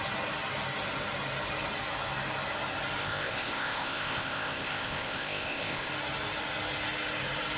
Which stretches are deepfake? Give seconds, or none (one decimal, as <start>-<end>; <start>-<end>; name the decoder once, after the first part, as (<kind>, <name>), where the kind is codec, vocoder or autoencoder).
3.0-5.9 (codec, ZipCodec)